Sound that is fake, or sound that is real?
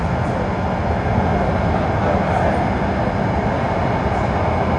real